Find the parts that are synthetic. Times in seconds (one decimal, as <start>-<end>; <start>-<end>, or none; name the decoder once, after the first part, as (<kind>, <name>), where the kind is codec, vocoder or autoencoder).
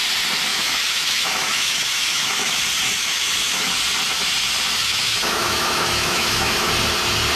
0.5-2.6 (autoencoder, DAC-VAE); 3.0-3.7; 4.8-6.7